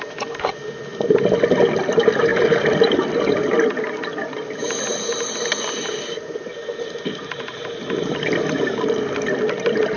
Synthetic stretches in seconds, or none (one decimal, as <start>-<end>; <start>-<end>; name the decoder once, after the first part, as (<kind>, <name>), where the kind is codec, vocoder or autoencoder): none